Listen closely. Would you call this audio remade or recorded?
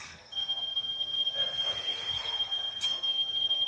remade